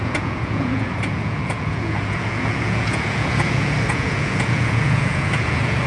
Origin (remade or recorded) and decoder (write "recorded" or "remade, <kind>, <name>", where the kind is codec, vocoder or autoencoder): remade, vocoder, Vocos